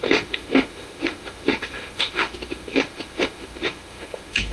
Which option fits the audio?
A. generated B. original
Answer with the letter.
A